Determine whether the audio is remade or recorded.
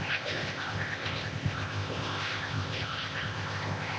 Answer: remade